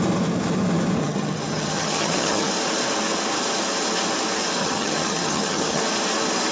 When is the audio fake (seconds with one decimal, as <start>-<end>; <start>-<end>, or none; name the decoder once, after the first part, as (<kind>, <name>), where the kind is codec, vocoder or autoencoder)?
1.0-2.5 (vocoder, HiFi-GAN); 4.6-5.8